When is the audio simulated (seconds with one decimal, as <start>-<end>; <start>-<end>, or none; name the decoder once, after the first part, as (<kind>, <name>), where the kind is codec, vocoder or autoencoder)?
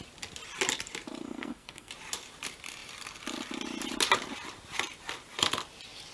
1.2-1.9 (codec, SNAC)